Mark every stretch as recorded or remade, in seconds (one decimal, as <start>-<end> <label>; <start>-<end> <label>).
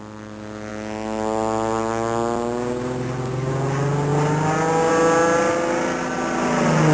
0.0-6.9 recorded